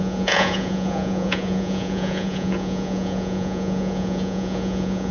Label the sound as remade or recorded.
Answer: remade